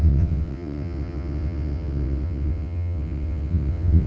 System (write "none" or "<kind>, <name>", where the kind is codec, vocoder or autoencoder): vocoder, WaveNeXt